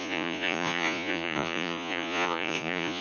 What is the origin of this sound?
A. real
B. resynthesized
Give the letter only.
B